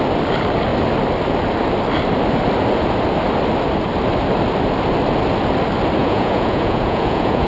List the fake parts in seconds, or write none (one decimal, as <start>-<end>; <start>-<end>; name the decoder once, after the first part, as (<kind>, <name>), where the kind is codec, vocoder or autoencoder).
6.0-7.5 (vocoder, Vocos)